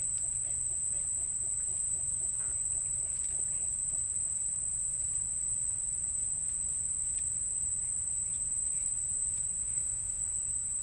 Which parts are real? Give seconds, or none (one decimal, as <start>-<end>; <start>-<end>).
0.0-9.6; 10.2-10.8